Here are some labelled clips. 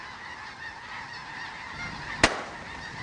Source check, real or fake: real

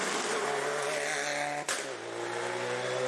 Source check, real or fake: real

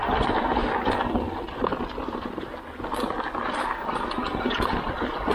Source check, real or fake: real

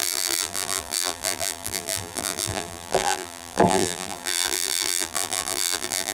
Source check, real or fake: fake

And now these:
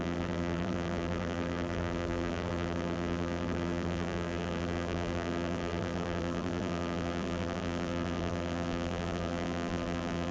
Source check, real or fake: fake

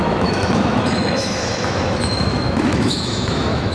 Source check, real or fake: fake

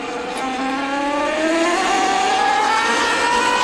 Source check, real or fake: real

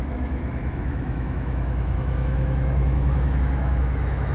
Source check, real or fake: fake